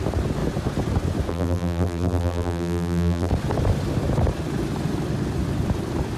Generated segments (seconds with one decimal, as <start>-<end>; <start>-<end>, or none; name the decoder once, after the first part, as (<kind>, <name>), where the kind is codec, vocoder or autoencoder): 1.3-3.3 (vocoder, BigVGAN v2)